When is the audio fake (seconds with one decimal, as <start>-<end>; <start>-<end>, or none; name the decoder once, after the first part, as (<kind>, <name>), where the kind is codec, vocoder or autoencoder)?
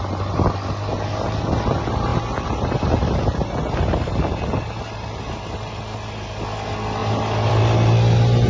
none